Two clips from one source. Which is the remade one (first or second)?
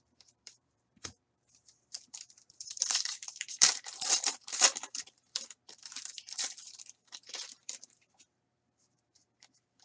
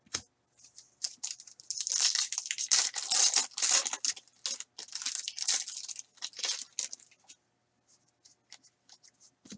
first